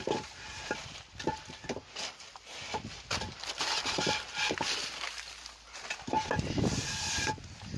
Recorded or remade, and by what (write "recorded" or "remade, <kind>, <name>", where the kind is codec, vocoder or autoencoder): recorded